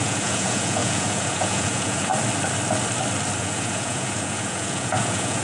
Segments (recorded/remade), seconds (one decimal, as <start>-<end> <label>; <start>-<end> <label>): 0.0-2.1 remade; 2.1-3.4 recorded; 3.4-5.4 remade